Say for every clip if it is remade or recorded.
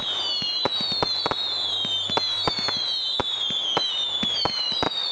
recorded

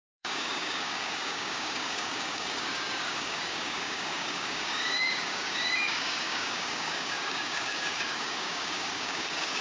remade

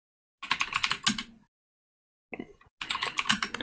recorded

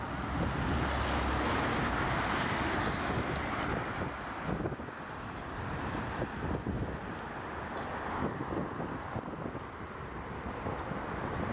recorded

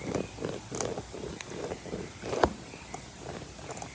recorded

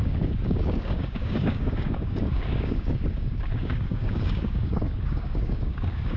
remade